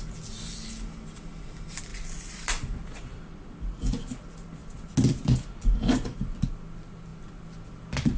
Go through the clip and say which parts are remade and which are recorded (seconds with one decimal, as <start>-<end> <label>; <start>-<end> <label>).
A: 0.0-8.2 recorded